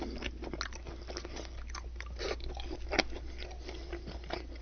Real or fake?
real